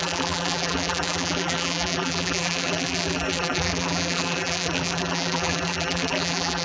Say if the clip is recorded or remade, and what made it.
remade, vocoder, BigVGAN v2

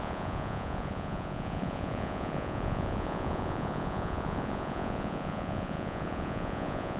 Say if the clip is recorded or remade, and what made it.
remade, vocoder, Vocos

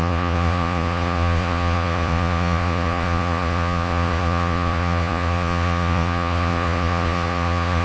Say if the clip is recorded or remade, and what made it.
remade, vocoder, Vocos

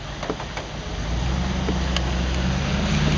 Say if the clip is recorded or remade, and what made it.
recorded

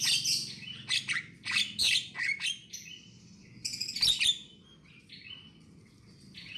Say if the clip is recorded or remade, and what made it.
remade, vocoder, BigVGAN v2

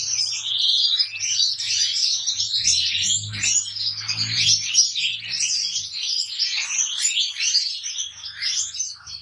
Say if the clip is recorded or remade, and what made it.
recorded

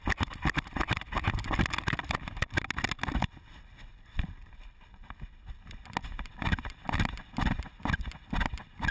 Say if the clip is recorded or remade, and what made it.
recorded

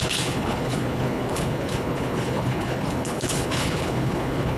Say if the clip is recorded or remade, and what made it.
remade, codec, HILCodec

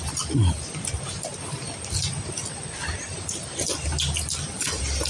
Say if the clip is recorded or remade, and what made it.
recorded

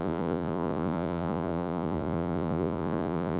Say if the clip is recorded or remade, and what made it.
remade, vocoder, Vocos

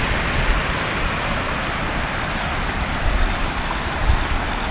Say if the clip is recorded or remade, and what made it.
remade, vocoder, BigVGAN v2